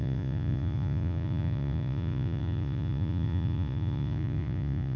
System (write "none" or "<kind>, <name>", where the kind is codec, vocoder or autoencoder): vocoder, Vocos